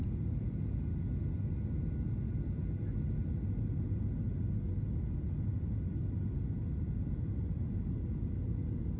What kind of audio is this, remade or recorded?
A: recorded